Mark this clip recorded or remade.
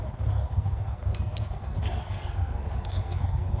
remade